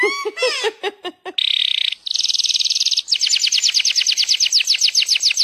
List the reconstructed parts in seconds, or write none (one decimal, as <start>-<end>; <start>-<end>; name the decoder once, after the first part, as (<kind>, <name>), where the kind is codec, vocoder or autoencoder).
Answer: none